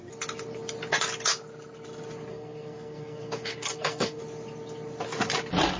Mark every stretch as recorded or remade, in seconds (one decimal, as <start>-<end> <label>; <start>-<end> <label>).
0.0-2.3 recorded; 2.3-4.2 remade; 4.2-5.8 recorded